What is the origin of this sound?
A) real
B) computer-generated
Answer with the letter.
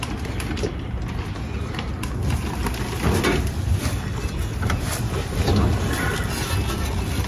A